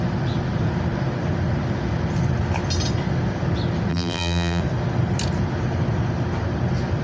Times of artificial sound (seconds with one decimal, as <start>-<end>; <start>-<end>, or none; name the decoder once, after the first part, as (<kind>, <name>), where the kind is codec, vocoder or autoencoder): 3.9-4.6 (vocoder, BigVGAN v2)